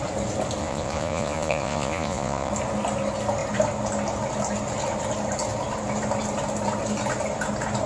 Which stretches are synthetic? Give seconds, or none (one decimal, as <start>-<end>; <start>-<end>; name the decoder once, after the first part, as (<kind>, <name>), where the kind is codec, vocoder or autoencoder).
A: 0.6-2.5 (vocoder, Vocos)

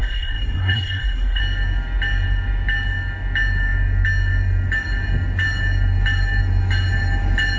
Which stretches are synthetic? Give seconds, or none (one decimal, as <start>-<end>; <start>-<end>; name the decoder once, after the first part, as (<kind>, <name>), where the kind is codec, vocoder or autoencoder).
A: 0.0-1.4 (codec, SNAC)

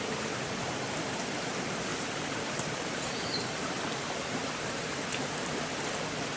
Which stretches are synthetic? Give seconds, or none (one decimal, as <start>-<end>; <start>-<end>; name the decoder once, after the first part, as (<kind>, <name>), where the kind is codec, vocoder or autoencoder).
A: 1.9-5.2 (vocoder, BigVGAN v2)

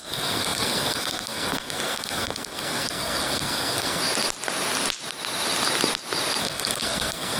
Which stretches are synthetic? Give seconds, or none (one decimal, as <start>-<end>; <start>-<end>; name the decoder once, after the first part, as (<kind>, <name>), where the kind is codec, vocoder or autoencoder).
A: 0.0-4.0 (codec, SNAC); 6.4-7.4

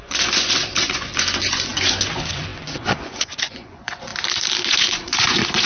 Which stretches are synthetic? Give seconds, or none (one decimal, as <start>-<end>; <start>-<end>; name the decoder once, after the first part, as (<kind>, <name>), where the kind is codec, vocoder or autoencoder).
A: 0.0-4.1 (vocoder, Vocos); 4.7-5.7

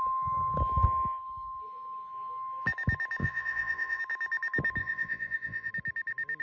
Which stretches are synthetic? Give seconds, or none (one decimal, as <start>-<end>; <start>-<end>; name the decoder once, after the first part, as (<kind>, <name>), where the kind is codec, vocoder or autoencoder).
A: 3.2-4.0 (vocoder, Vocos); 4.8-5.7